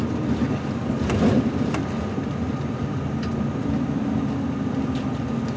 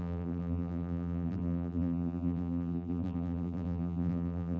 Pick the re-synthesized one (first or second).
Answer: second